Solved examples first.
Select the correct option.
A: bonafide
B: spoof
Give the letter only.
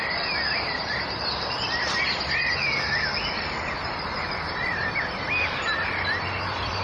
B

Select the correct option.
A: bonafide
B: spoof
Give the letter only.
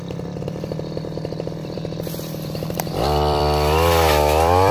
B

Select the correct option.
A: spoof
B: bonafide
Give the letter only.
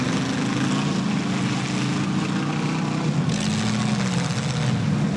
B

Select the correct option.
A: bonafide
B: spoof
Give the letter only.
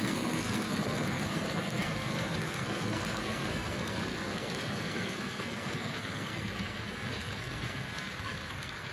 B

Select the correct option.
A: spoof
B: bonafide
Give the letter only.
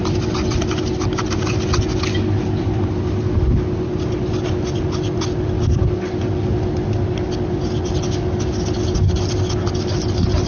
B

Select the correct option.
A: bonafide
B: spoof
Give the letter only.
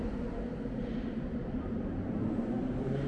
A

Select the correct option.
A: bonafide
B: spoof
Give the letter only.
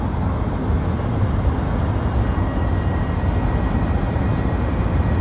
A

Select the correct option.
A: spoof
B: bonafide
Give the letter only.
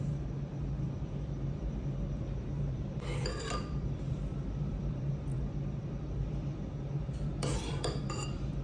A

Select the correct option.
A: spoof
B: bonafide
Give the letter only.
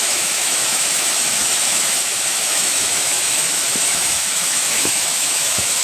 A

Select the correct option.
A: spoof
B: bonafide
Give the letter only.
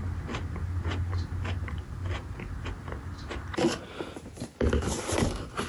B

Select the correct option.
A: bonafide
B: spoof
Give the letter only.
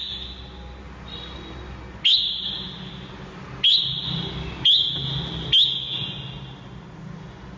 A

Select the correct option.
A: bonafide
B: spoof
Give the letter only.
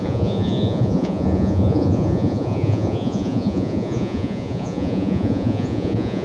B